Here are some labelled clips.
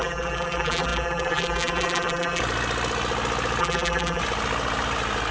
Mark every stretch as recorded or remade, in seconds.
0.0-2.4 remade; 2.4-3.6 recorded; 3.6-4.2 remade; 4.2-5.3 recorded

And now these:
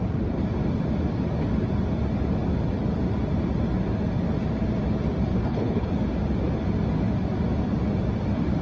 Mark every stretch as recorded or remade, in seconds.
0.0-5.3 recorded; 5.3-5.9 remade; 5.9-8.6 recorded